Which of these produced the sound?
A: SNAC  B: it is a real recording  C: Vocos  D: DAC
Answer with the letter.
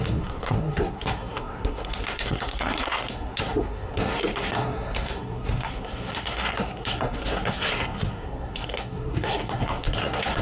A